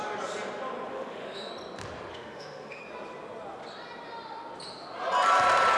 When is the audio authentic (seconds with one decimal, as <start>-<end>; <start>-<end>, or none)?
0.0-0.9; 1.5-2.1; 2.8-5.8